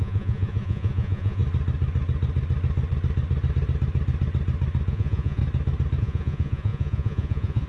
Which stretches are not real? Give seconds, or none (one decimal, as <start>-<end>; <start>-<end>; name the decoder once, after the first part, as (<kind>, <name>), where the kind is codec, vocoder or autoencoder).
0.0-1.4 (vocoder, Vocos); 4.9-5.4; 6.0-7.7